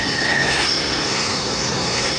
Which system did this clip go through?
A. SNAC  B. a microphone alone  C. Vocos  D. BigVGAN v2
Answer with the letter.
A